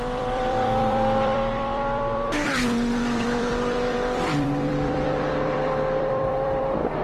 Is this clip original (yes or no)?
no